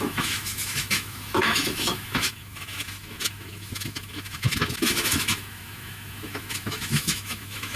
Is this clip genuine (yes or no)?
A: no